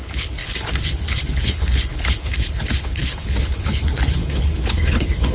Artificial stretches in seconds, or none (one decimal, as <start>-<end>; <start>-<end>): 0.0-5.3